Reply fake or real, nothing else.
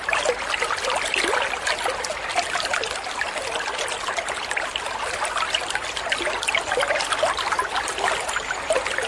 real